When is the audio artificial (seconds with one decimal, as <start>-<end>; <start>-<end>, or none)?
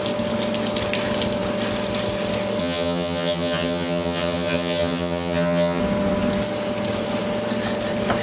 2.6-5.8